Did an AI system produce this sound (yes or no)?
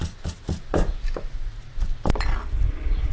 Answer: no